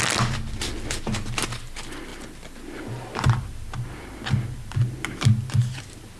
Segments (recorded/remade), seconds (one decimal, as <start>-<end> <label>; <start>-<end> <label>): 0.0-6.2 recorded